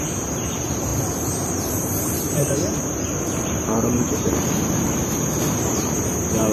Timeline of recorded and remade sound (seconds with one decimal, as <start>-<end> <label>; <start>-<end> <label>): 0.0-0.9 remade; 0.9-1.5 recorded; 1.5-6.5 remade